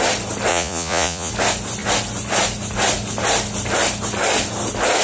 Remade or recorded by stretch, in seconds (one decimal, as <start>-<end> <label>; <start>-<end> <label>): 0.0-0.5 recorded; 0.5-1.3 remade; 1.3-5.0 recorded